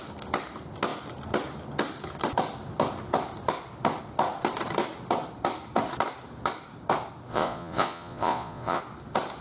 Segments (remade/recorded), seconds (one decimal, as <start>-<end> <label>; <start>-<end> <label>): 0.0-7.3 recorded; 7.3-8.8 remade; 8.8-9.4 recorded